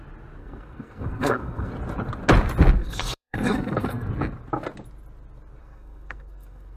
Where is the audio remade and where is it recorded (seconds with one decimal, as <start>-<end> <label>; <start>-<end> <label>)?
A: 0.0-0.4 recorded; 0.4-1.7 remade; 1.7-2.8 recorded; 2.8-4.1 remade; 4.1-5.6 recorded; 5.6-6.8 remade